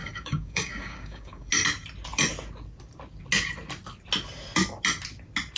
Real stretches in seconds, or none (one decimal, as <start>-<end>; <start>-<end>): 1.5-5.6